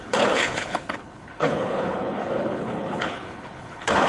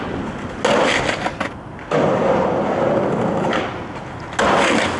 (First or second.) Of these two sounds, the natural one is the second